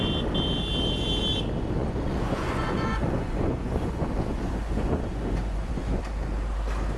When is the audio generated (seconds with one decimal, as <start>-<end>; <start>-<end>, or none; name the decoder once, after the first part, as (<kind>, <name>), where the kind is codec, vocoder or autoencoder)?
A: 1.8-6.0 (vocoder, Vocos)